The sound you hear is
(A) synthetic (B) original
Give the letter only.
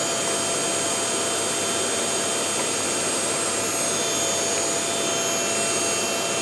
B